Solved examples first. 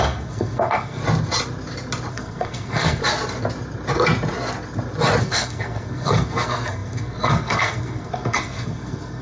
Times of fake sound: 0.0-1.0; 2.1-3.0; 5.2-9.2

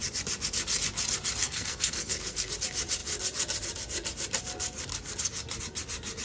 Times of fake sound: 1.4-2.5

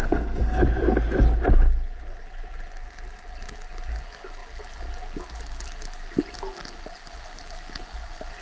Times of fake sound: 0.0-0.6

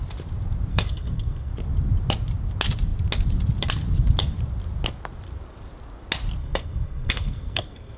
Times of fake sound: 0.7-1.5; 6.4-8.0

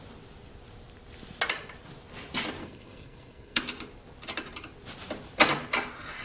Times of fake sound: 2.6-3.6

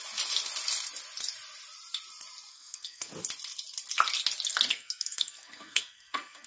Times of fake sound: 2.5-3.1; 4.7-6.5

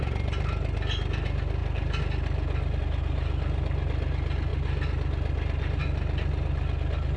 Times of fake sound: none

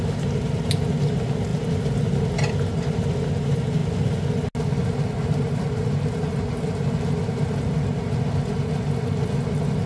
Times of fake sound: none